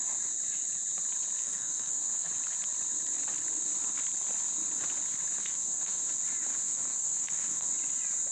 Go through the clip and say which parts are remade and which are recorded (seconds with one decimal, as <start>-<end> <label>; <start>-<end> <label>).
0.0-1.4 recorded; 1.4-2.3 remade; 2.3-5.4 recorded; 5.4-6.0 remade; 6.0-6.5 recorded; 6.5-7.7 remade; 7.7-8.3 recorded